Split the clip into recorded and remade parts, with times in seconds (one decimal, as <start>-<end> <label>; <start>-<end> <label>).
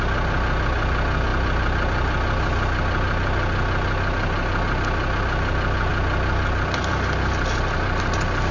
0.0-8.5 recorded